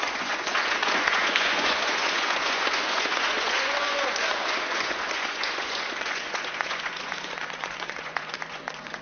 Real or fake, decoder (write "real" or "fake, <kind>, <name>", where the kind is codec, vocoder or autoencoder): fake, vocoder, Vocos